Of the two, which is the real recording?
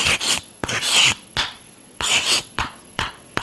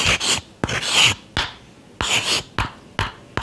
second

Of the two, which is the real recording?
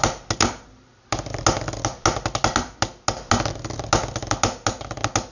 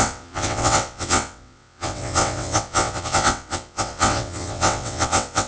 first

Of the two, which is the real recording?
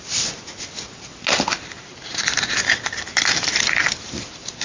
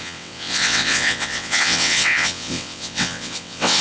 first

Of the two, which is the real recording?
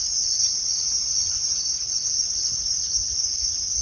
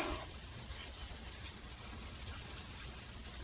first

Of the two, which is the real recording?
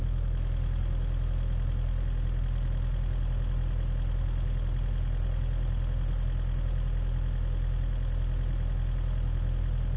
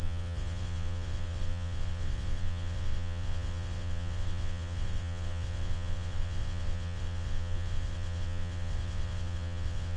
first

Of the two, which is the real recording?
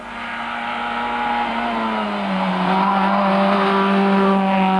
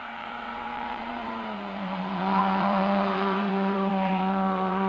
first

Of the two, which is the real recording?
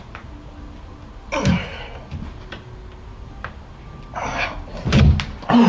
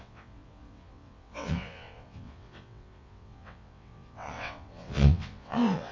first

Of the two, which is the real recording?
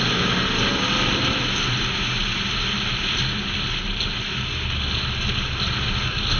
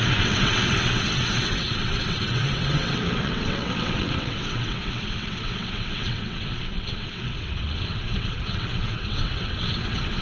first